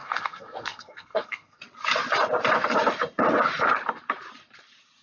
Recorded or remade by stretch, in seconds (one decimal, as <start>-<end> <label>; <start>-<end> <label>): 0.0-1.6 remade; 1.6-5.0 recorded